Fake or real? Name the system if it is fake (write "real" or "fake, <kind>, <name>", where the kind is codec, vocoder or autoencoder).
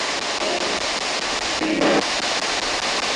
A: real